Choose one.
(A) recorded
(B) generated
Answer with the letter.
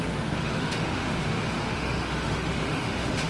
B